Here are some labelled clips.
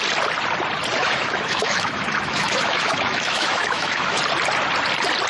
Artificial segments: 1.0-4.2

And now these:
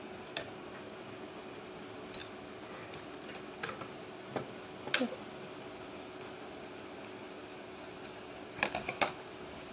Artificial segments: none

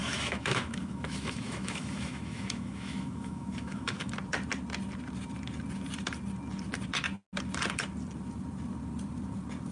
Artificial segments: 0.0-4.1

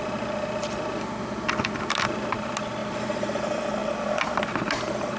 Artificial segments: none